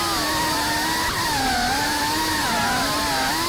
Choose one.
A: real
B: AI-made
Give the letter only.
A